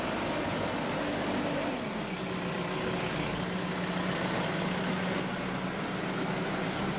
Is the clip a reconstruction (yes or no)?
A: no